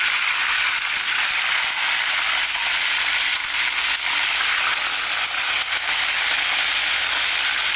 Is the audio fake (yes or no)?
no